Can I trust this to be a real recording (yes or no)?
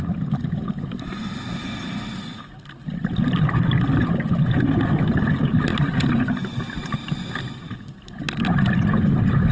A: yes